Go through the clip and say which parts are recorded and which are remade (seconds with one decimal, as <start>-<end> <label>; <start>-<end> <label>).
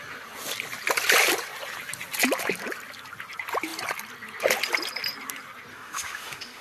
0.0-5.7 recorded; 5.7-6.6 remade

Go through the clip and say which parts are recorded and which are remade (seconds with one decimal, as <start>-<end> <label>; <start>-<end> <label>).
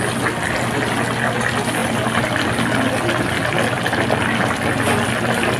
0.0-5.6 recorded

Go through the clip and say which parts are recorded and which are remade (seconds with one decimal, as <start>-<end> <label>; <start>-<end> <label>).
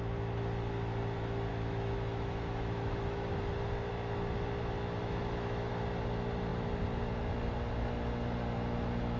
0.0-1.5 recorded; 1.5-3.4 remade; 3.4-5.0 recorded; 5.0-5.7 remade; 5.7-9.2 recorded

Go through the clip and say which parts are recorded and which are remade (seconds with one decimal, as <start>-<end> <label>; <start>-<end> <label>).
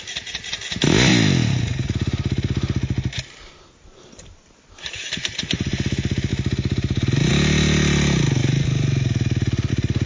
0.0-10.1 recorded